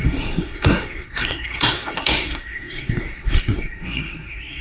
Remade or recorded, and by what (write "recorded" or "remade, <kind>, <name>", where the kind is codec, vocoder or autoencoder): remade, codec, SNAC